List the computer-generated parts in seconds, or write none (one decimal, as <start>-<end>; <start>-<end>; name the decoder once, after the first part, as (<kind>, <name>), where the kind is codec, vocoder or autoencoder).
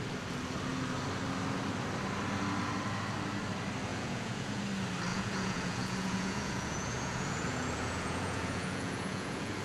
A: 3.9-4.6 (vocoder, Vocos); 5.1-9.6